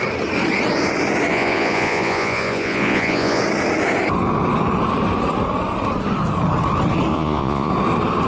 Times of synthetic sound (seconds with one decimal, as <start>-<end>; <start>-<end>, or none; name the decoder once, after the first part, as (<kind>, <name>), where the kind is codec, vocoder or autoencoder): 1.3-3.4 (vocoder, Vocos); 7.1-7.7